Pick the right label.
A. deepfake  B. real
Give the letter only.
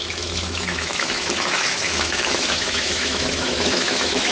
A